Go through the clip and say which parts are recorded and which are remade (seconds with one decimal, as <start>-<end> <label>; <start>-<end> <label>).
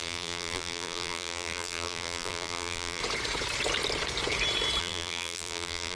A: 0.0-3.0 remade; 3.0-4.8 recorded; 4.8-6.0 remade